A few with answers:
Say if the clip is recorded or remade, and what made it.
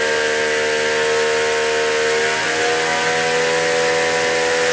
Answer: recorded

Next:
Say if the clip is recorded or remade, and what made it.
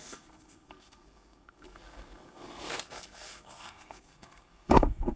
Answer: remade, codec, SNAC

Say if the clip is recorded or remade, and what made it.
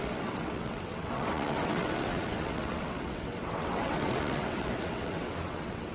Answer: remade, vocoder, WaveNeXt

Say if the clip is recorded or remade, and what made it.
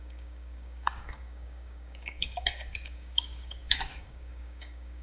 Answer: remade, codec, DAC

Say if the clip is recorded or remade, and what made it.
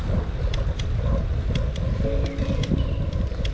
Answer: recorded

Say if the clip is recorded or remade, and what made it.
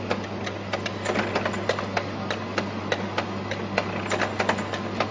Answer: recorded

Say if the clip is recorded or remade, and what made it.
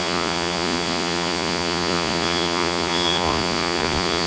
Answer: remade, vocoder, Vocos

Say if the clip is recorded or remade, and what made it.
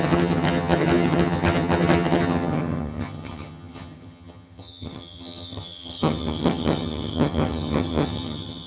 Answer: remade, vocoder, HiFi-GAN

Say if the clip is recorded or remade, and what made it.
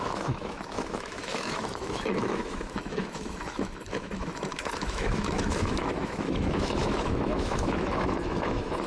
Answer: remade, autoencoder, DAC-VAE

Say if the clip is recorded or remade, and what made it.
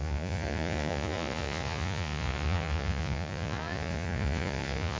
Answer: remade, vocoder, Vocos